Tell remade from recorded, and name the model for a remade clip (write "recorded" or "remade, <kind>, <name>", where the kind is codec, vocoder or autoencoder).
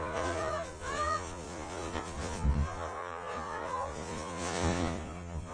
remade, vocoder, Vocos